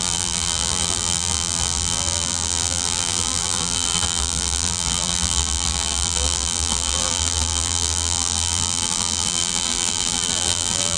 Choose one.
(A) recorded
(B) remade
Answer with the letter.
B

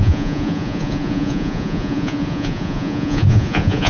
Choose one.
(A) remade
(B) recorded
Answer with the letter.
A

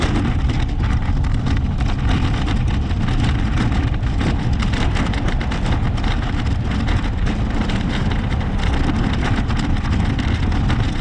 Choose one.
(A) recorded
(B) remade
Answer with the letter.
A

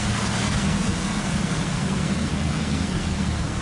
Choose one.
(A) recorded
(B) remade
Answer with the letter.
B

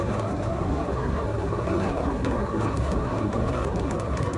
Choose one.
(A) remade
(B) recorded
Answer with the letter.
A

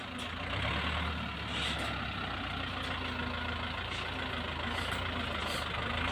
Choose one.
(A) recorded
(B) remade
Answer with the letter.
A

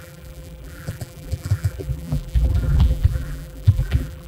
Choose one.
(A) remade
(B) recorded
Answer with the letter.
A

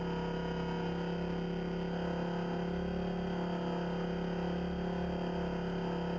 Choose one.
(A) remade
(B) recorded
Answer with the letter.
B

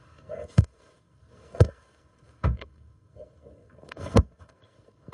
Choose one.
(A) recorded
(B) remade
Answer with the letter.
B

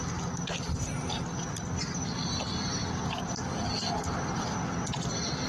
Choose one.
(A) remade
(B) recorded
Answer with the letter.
B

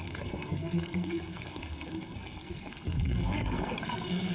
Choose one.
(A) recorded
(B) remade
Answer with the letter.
B